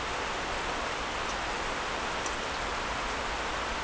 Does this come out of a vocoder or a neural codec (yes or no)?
no